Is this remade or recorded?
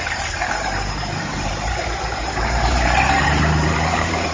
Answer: remade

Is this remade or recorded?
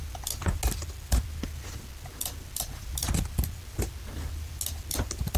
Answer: recorded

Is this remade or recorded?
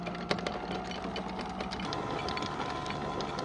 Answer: recorded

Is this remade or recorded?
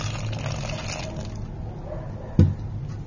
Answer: recorded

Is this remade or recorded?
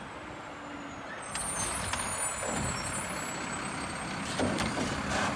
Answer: recorded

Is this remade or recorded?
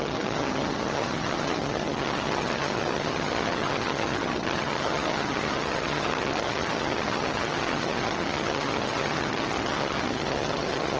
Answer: remade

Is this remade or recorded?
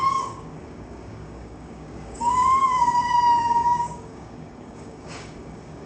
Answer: remade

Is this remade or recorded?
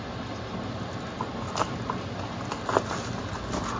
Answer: recorded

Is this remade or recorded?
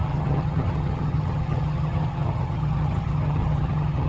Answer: remade